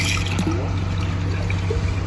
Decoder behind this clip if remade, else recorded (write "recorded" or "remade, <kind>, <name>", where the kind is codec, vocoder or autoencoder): recorded